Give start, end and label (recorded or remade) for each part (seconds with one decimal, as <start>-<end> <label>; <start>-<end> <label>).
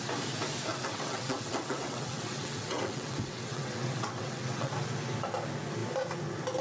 0.0-0.7 recorded; 0.7-4.7 remade; 4.7-6.6 recorded